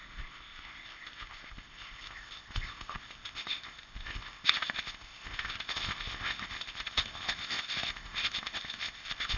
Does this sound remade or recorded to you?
remade